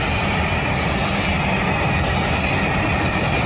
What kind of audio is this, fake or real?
real